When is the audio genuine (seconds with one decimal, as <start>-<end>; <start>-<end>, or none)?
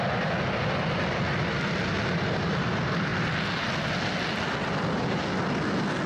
0.0-6.1